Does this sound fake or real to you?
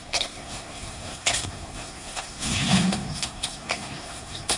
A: fake